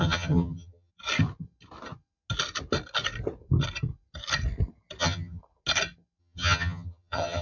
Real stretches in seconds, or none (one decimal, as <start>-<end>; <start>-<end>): 0.9-5.0; 5.4-6.2